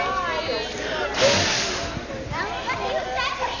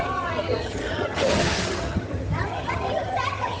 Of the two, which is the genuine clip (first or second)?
first